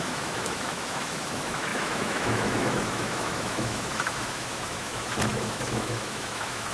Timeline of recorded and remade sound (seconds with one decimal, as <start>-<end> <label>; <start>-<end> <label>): 0.0-6.7 remade